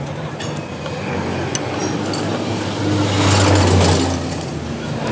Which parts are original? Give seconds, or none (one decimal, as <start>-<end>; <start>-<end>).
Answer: 0.0-5.1